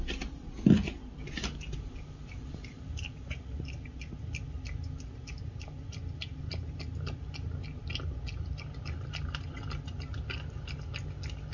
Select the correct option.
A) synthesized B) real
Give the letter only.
B